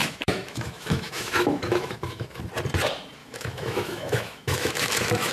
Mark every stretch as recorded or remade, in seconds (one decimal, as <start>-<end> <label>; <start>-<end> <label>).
0.0-2.4 remade; 2.4-3.2 recorded; 3.2-5.3 remade